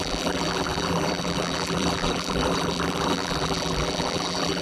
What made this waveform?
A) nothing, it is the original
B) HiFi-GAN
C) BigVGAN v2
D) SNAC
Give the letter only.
C